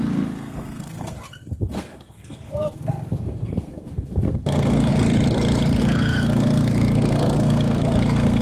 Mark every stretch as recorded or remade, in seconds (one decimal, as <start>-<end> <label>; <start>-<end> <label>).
0.0-4.9 remade; 4.9-5.8 recorded; 5.8-8.4 remade